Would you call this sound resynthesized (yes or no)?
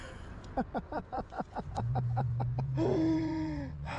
yes